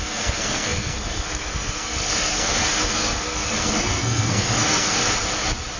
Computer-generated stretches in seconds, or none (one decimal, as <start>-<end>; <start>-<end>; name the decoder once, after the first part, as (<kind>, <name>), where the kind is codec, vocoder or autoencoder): 0.0-5.0 (codec, SNAC)